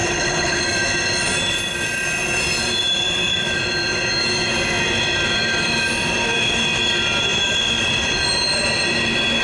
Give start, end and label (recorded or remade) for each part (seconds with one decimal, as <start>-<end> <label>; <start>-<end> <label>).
0.0-0.6 remade; 0.6-9.4 recorded